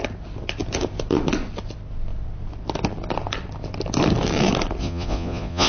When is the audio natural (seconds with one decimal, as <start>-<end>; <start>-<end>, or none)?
0.0-4.8